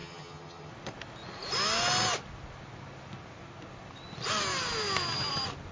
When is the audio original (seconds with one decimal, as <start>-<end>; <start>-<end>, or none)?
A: 0.7-5.7